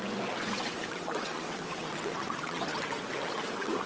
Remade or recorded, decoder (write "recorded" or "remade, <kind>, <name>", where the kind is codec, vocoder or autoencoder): remade, vocoder, WaveNeXt